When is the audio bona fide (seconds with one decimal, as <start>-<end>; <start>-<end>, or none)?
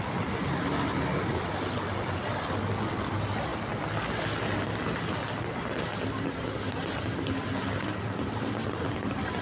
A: 0.0-9.4